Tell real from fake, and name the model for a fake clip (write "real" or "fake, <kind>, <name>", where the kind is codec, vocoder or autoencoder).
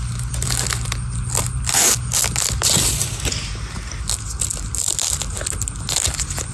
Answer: real